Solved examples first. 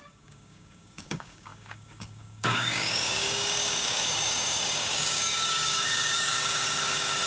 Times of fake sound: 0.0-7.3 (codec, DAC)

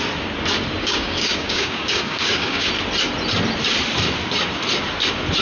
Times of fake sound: 0.8-2.7 (codec, DAC)

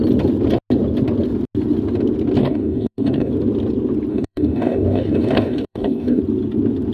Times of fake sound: 2.4-3.3 (codec, DAC); 4.1-6.2